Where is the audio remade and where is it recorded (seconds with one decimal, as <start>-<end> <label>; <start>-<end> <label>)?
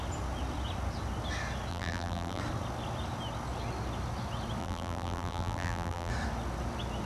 0.0-1.7 recorded; 1.7-2.4 remade; 2.4-4.6 recorded; 4.6-6.1 remade; 6.1-7.1 recorded